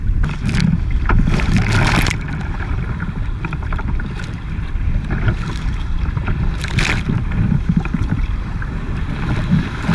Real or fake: fake